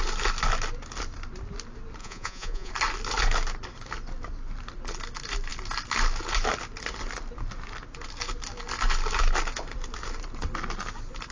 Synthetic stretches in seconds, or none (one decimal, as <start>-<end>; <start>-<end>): 2.0-2.7